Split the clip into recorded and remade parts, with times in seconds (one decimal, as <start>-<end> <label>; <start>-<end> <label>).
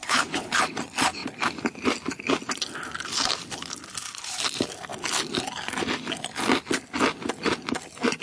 0.0-0.6 remade; 0.6-8.2 recorded